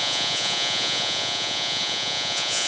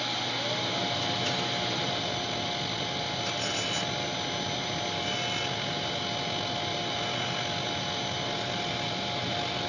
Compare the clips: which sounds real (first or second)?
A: second